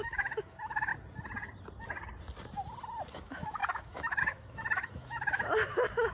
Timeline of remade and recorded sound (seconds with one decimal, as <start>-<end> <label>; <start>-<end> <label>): 0.0-0.9 remade; 0.9-3.1 recorded; 3.1-6.1 remade